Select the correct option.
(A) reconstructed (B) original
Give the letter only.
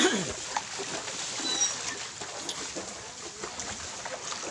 B